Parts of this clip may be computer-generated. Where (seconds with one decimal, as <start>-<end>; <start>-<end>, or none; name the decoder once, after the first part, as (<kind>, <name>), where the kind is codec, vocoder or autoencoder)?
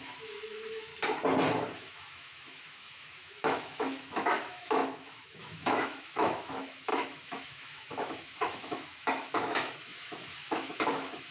0.0-0.9 (autoencoder, DAC-VAE); 1.8-11.3